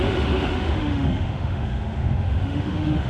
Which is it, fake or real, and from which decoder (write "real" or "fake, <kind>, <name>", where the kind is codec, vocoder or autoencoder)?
fake, autoencoder, DAC-VAE